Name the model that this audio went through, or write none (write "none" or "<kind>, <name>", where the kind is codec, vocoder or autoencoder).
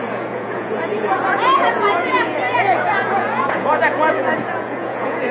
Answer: vocoder, Vocos